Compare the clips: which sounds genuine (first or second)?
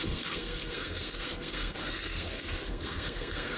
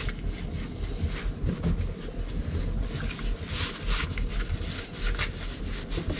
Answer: second